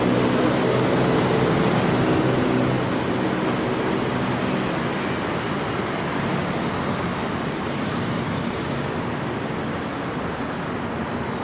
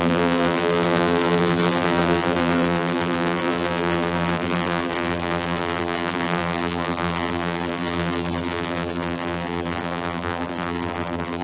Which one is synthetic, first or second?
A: second